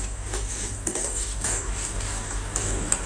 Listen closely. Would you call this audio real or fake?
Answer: fake